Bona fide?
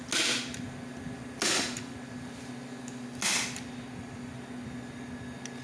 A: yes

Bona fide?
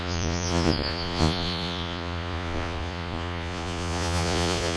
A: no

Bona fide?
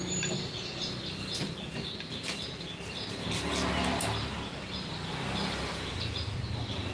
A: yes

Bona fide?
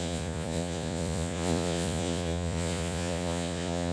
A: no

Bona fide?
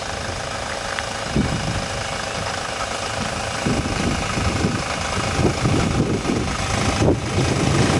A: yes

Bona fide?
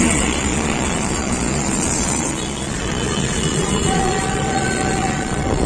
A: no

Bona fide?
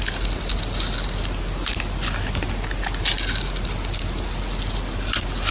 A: yes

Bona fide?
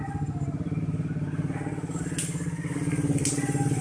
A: yes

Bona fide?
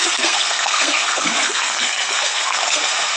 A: no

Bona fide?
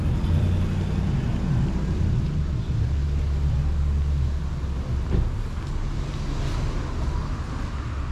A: yes